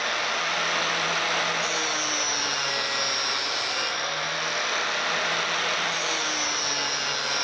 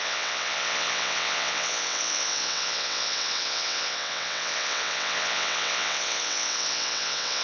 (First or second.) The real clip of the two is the first